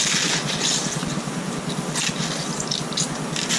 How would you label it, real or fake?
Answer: real